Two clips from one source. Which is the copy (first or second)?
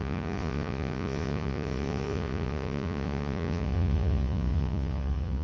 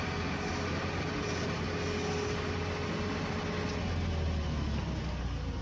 first